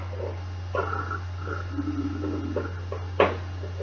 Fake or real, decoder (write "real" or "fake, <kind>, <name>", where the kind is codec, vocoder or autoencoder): real